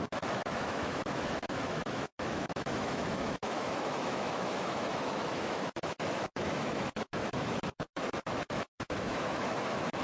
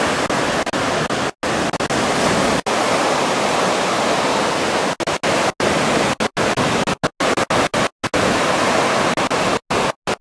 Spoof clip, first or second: first